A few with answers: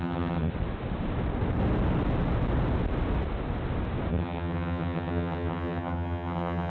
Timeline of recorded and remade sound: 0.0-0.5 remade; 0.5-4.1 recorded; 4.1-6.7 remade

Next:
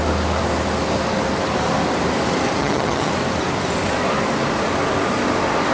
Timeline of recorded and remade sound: 0.0-2.6 recorded; 2.6-3.1 remade; 3.1-5.7 recorded

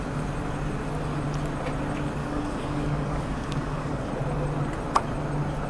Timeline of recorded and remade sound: 0.0-2.2 recorded; 2.2-4.1 remade; 4.1-5.7 recorded